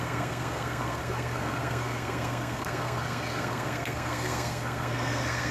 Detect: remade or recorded remade